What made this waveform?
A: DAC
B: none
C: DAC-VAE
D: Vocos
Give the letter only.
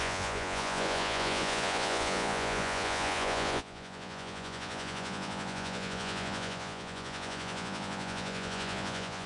D